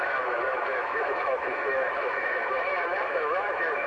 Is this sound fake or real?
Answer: fake